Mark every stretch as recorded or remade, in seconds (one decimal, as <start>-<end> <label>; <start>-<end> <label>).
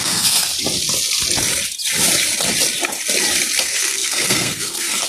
0.0-0.5 remade; 0.5-3.6 recorded; 3.6-5.1 remade